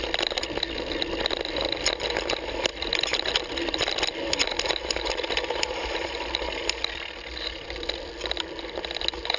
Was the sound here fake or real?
real